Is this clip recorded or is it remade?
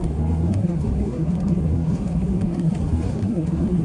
remade